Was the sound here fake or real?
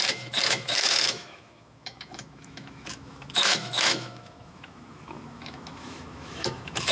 fake